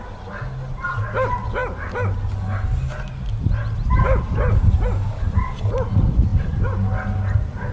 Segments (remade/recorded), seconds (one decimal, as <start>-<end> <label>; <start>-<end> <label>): 0.0-7.7 recorded